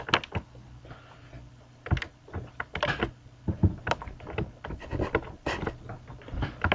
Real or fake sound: real